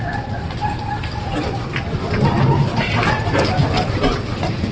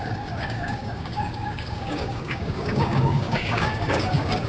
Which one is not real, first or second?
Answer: second